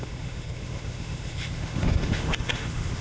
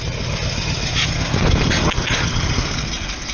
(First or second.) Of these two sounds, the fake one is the first